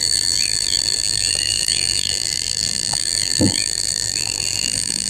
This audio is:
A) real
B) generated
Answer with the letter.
B